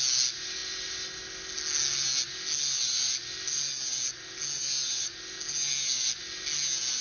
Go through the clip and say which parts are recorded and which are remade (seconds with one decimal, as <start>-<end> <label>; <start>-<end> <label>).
0.0-7.0 recorded